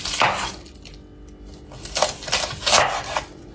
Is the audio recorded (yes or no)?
yes